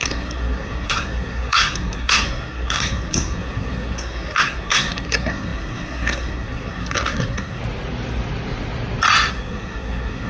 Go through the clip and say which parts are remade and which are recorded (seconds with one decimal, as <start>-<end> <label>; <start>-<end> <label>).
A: 0.0-7.6 remade; 7.6-9.3 recorded; 9.3-10.3 remade